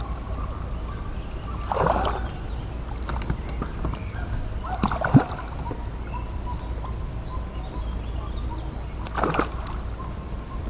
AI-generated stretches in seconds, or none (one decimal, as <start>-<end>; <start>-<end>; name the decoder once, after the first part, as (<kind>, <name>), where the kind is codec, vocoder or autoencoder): 4.0-4.5 (codec, DAC)